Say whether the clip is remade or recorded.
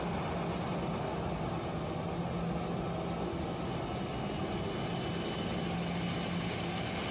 recorded